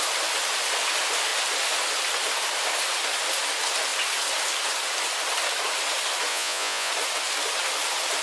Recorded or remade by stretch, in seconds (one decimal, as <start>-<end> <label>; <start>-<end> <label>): 0.0-6.3 recorded; 6.3-6.9 remade; 6.9-8.2 recorded